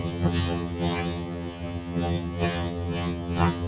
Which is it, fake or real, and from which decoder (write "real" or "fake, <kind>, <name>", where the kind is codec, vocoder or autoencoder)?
fake, vocoder, HiFi-GAN